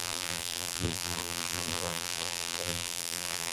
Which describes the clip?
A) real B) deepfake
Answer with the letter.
B